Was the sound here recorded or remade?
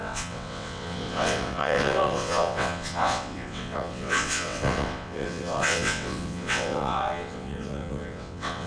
remade